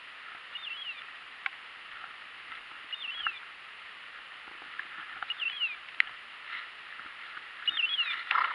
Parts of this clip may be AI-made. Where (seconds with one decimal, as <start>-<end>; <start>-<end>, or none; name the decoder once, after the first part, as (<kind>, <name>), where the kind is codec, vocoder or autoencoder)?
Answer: none